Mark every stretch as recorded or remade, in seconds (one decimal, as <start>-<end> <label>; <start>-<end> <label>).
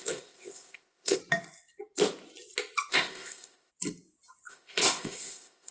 0.0-1.2 remade; 1.2-2.9 recorded; 2.9-3.7 remade; 3.7-4.5 recorded; 4.5-5.7 remade